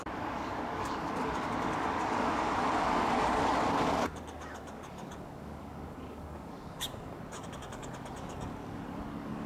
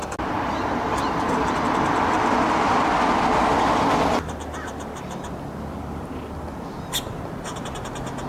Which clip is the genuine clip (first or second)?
second